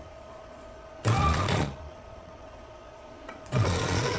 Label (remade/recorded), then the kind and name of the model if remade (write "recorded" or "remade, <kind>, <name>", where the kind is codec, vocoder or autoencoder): remade, vocoder, Vocos